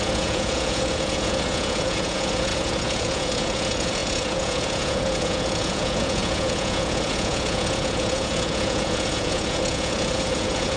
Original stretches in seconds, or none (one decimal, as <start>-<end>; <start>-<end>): none

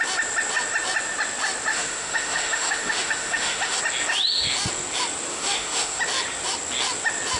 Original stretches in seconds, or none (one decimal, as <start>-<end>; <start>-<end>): 0.0-1.7; 3.8-5.3; 6.0-7.4